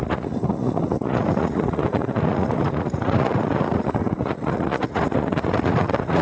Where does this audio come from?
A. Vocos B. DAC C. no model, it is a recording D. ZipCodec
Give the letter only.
A